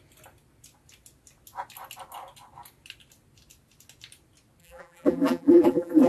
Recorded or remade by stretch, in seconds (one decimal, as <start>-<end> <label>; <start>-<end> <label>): 0.0-4.6 recorded; 4.6-6.1 remade